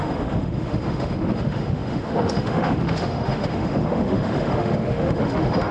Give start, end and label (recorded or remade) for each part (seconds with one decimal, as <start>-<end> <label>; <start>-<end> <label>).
0.0-5.7 remade